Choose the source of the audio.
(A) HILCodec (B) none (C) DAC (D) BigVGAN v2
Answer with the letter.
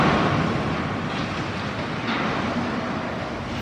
B